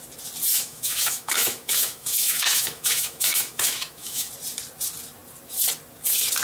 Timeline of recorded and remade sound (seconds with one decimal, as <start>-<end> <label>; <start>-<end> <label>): 0.0-0.5 recorded; 0.5-4.3 remade; 4.3-6.4 recorded